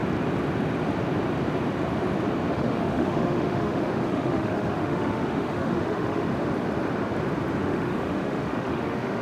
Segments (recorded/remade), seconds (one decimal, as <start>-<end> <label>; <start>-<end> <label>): 0.0-2.5 recorded; 2.5-6.3 remade; 6.3-7.6 recorded; 7.6-9.2 remade